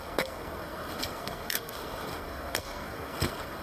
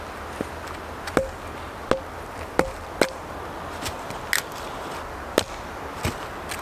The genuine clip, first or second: second